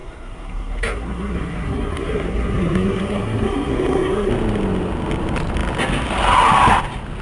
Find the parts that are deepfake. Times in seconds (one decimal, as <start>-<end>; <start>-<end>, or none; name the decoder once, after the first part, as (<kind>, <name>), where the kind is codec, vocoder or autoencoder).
0.0-4.3 (codec, SNAC)

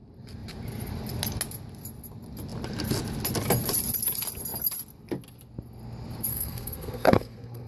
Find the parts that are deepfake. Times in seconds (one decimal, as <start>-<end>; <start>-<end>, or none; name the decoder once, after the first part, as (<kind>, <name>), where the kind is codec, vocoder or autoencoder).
6.3-7.7 (codec, SNAC)

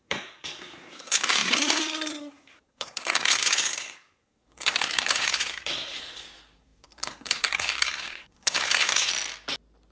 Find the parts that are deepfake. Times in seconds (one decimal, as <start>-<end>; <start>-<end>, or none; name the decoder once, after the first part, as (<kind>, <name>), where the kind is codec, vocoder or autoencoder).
0.0-9.1 (codec, SNAC)

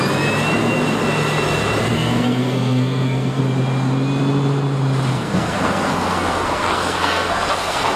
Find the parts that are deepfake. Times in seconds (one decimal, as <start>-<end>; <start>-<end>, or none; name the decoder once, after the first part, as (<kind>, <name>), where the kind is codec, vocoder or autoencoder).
1.9-3.4 (codec, SNAC); 5.1-8.0

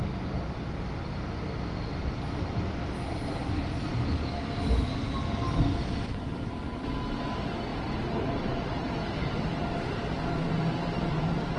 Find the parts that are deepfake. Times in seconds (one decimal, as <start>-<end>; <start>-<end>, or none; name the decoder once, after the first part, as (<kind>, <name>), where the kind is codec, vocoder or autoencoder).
none

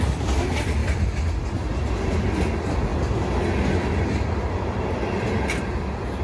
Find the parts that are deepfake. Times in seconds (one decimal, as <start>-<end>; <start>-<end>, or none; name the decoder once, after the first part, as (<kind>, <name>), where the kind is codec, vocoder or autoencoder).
none

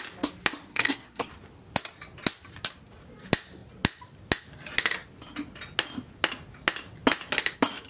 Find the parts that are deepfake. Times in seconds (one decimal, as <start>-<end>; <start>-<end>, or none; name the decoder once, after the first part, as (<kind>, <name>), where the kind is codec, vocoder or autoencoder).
0.7-1.3 (codec, SNAC)